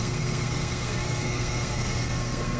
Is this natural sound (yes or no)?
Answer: no